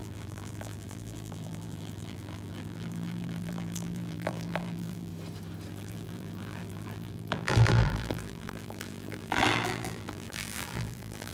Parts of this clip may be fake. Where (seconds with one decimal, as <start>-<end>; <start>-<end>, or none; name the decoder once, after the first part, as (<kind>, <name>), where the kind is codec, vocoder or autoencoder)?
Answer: 0.0-5.1 (vocoder, BigVGAN v2); 5.7-11.3